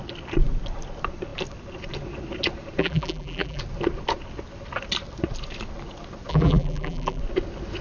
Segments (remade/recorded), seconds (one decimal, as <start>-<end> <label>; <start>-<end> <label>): 0.0-2.8 recorded; 2.8-3.6 remade; 3.6-6.3 recorded; 6.3-7.2 remade; 7.2-7.8 recorded